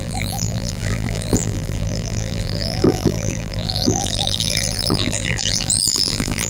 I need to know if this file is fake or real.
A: fake